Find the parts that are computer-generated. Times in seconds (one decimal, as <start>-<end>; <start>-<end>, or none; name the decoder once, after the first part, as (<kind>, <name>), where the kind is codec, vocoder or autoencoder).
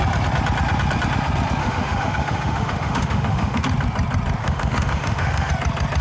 1.6-3.6 (autoencoder, DAC-VAE); 4.4-5.5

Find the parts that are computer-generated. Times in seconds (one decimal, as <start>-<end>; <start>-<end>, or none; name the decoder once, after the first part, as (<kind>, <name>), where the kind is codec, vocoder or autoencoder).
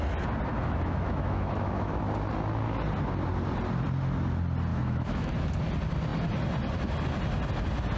0.5-2.0 (autoencoder, DAC-VAE); 4.7-5.3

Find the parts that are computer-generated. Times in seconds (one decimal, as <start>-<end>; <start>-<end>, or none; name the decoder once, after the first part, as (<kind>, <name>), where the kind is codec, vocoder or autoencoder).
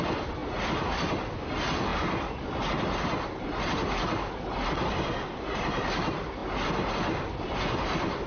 none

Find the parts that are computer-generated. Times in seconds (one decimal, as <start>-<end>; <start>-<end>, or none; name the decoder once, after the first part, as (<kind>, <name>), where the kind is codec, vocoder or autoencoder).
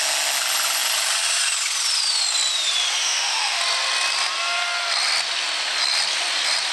3.0-3.6 (autoencoder, DAC-VAE)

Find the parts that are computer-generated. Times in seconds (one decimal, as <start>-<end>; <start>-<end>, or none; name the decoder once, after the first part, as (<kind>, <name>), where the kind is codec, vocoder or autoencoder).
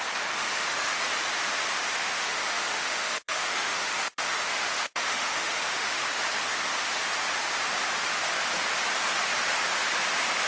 0.4-1.0 (autoencoder, DAC-VAE); 2.0-6.0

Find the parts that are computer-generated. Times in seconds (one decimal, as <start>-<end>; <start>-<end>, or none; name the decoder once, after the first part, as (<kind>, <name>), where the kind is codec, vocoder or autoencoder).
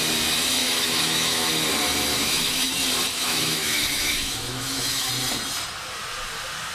0.6-1.5 (autoencoder, DAC-VAE); 2.1-2.7; 3.1-5.1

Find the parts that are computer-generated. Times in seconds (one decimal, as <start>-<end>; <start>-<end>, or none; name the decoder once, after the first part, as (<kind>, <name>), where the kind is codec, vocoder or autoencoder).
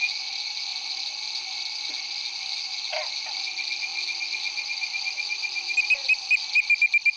none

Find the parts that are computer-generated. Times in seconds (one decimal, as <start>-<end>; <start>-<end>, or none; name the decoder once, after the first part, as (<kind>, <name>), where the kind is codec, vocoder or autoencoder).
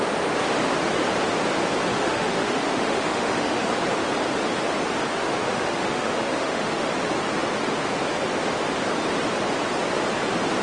1.9-3.7 (autoencoder, DAC-VAE); 5.1-6.9